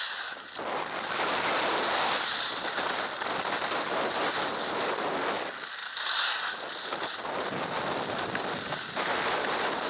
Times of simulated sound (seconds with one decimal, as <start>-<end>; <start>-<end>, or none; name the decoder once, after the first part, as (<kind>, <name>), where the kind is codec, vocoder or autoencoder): none